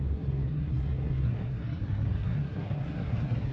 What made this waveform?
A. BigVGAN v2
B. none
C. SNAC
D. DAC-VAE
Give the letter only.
C